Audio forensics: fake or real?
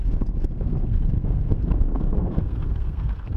fake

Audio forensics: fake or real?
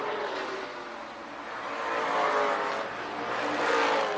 real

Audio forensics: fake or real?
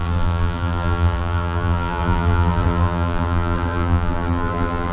fake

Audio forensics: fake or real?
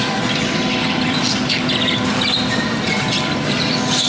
real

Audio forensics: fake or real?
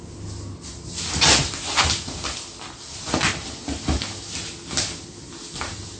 real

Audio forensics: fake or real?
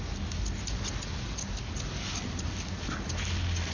real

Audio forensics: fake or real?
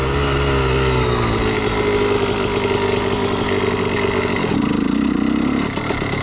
real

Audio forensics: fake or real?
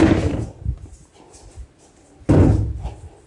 real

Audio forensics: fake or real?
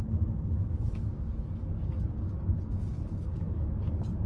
fake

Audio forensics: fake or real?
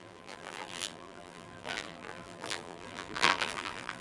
fake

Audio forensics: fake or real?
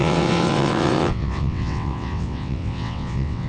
fake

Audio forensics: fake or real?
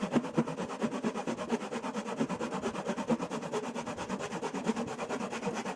real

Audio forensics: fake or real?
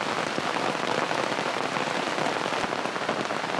real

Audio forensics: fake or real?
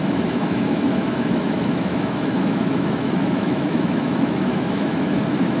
fake